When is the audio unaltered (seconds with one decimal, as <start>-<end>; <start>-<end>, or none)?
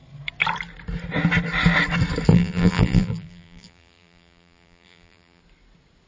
0.0-2.3; 5.4-6.1